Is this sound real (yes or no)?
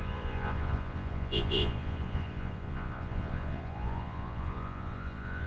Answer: no